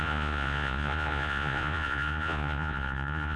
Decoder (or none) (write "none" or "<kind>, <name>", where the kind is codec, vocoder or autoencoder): vocoder, Vocos